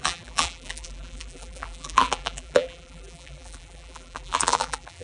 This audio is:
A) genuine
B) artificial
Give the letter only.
B